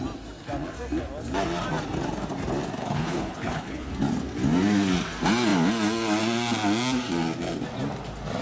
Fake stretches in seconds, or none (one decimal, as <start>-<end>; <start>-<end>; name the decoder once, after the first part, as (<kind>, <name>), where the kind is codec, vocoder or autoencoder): 2.8-3.9 (codec, HILCodec)